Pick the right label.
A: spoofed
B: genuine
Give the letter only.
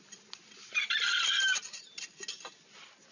B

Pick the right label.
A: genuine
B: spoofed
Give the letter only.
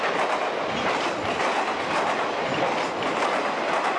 A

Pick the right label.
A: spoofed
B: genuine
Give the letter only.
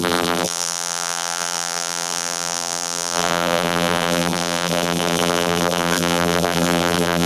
A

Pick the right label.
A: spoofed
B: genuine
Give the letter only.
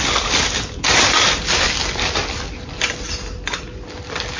B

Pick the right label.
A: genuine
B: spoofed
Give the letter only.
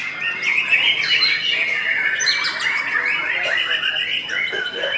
A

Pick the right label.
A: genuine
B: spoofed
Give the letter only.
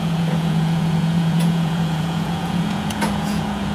B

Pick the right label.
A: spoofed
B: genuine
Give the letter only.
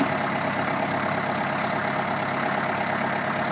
B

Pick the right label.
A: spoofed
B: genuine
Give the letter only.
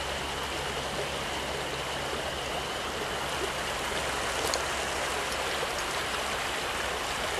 B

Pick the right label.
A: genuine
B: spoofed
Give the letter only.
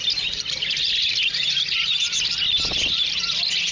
A